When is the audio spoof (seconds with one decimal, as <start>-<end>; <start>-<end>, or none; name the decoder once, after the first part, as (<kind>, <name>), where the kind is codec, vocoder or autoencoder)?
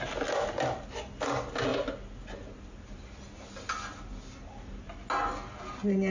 none